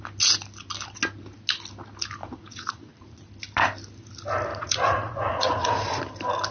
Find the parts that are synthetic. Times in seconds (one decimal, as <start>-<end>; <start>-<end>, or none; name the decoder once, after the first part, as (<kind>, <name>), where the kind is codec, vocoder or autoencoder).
2.2-3.3 (vocoder, Vocos); 4.5-6.0